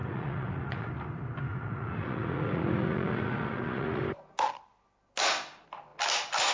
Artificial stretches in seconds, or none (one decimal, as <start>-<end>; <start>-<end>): 0.0-0.9; 1.5-4.0